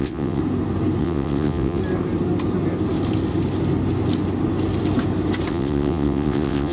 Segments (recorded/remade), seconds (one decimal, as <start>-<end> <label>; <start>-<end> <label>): 0.0-0.4 remade; 0.4-1.0 recorded; 1.0-1.8 remade; 1.8-5.5 recorded; 5.5-6.7 remade

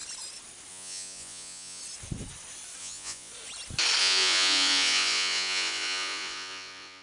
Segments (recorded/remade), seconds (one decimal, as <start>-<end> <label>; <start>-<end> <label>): 0.0-0.7 recorded; 0.7-1.8 remade; 1.8-2.8 recorded; 2.8-3.3 remade; 3.3-4.0 recorded; 4.0-7.0 remade